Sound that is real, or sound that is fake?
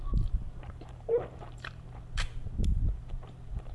fake